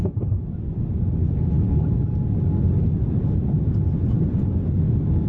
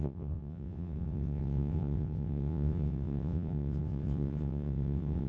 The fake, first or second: second